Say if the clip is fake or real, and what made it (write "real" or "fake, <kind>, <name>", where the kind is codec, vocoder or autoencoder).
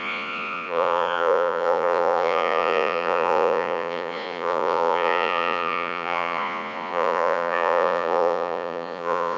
fake, vocoder, Vocos